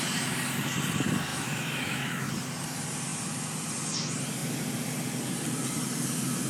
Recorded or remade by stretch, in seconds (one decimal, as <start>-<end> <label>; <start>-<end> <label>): 0.0-1.3 recorded; 1.3-2.3 remade; 2.3-6.5 recorded